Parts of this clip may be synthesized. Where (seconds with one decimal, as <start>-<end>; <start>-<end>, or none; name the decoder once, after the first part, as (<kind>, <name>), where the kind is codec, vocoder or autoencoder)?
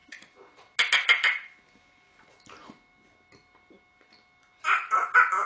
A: none